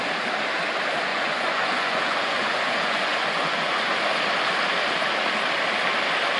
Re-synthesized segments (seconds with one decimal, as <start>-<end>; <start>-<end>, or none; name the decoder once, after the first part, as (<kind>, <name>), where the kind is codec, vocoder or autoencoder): 1.1-4.0 (vocoder, Vocos)